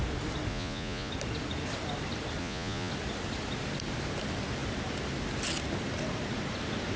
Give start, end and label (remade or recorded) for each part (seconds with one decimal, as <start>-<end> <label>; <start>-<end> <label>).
0.0-0.5 recorded; 0.5-1.1 remade; 1.1-2.4 recorded; 2.4-2.9 remade; 2.9-7.0 recorded